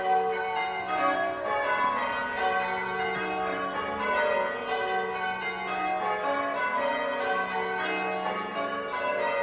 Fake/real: real